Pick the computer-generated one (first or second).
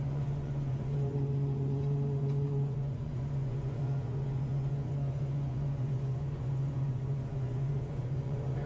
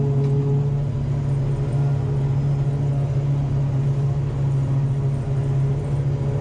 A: first